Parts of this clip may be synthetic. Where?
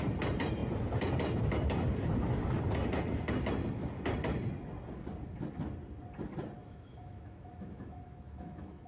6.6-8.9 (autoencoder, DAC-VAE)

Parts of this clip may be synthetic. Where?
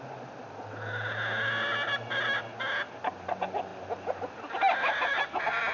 none